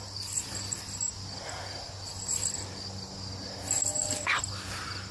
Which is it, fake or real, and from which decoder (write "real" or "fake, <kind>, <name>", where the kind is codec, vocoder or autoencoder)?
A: real